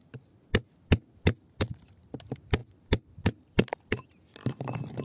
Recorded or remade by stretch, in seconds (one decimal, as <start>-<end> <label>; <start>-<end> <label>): 0.0-5.0 recorded